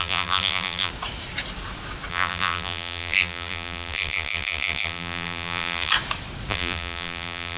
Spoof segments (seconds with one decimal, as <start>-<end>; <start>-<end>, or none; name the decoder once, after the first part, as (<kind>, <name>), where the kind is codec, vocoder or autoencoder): 0.0-0.9 (vocoder, BigVGAN v2); 2.1-5.9; 6.5-7.6